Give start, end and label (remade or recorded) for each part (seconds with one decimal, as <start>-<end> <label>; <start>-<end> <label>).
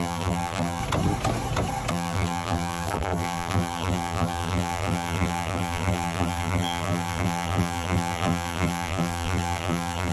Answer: 0.0-0.8 remade; 0.8-1.9 recorded; 1.9-10.1 remade